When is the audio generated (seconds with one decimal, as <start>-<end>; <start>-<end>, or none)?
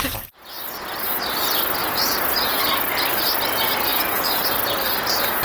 1.8-2.6; 3.9-4.4